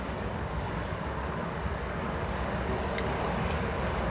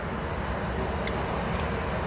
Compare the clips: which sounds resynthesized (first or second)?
first